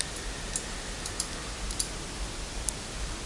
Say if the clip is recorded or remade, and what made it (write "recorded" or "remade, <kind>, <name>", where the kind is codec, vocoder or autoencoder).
recorded